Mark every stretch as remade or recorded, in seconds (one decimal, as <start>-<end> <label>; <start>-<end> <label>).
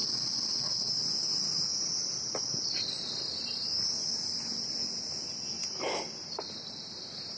0.0-0.9 remade; 0.9-7.4 recorded